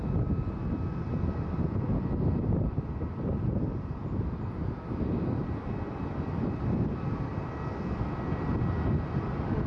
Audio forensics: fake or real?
real